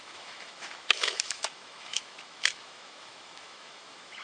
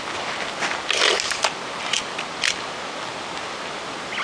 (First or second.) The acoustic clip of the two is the second